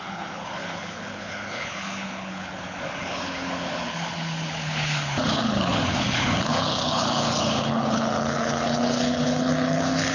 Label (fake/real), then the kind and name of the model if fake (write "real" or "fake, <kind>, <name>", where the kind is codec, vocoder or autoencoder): fake, codec, HILCodec